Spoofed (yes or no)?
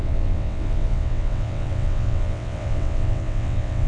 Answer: yes